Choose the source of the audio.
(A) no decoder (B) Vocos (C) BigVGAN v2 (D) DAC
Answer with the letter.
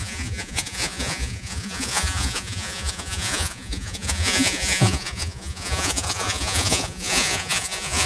B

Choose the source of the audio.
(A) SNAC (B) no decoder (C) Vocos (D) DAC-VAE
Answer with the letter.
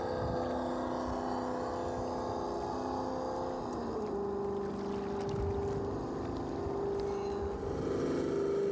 B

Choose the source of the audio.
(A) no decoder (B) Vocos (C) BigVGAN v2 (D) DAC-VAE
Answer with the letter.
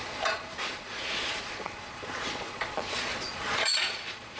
B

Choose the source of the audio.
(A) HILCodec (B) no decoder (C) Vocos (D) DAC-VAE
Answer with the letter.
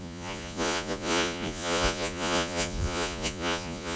C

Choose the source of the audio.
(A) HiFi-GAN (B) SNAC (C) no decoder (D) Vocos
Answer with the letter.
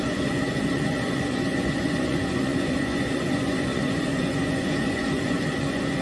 D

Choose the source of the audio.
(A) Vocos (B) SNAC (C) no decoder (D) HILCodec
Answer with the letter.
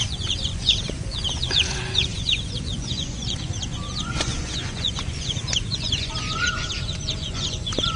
A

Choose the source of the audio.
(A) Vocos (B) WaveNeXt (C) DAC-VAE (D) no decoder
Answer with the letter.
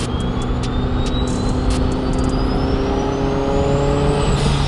D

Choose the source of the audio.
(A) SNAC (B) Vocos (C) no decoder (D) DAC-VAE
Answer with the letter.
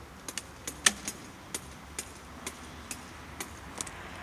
C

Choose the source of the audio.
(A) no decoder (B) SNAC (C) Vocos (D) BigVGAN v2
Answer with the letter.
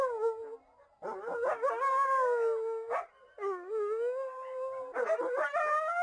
A